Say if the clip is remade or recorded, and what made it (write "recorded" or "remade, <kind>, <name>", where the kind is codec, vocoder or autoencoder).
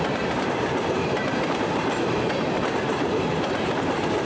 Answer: remade, vocoder, BigVGAN v2